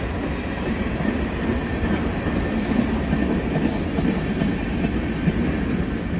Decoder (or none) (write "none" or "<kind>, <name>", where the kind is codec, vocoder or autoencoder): none